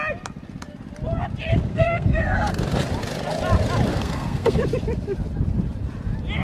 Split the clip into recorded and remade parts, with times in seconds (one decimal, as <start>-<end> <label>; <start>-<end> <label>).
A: 0.0-1.7 recorded; 1.7-2.5 remade; 2.5-3.9 recorded; 3.9-4.6 remade; 4.6-6.4 recorded